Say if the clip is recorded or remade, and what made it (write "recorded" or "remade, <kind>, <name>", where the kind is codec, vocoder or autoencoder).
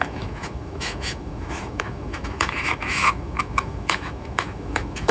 remade, autoencoder, DAC-VAE